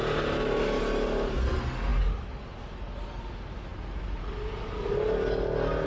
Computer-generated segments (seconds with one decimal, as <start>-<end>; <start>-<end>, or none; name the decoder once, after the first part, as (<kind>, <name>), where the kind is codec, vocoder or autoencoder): none

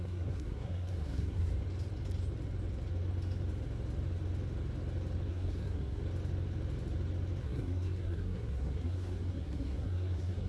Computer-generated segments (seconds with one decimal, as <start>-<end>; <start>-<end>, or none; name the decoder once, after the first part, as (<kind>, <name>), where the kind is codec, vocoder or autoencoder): 0.0-1.5 (codec, SNAC); 5.3-6.0; 7.4-10.5

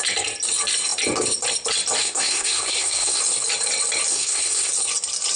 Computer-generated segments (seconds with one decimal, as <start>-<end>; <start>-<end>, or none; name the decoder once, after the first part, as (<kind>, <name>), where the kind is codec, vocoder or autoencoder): 2.0-3.2 (codec, SNAC); 4.1-4.7

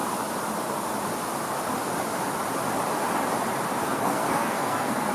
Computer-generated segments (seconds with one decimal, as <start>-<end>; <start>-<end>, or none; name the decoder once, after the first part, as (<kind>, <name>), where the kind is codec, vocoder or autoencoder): 3.8-5.1 (codec, SNAC)

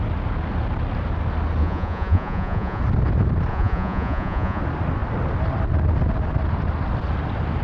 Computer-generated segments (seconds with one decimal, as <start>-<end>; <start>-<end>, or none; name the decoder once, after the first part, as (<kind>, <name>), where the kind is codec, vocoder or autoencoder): 1.6-2.8 (vocoder, Vocos); 3.5-4.6

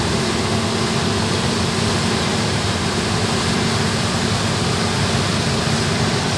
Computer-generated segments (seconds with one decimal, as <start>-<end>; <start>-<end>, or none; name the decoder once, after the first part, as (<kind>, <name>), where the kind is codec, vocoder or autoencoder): 2.3-3.2 (vocoder, BigVGAN v2)

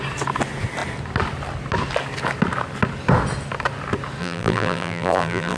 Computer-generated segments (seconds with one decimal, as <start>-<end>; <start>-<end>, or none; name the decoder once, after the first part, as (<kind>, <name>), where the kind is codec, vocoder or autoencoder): 4.2-5.6 (vocoder, BigVGAN v2)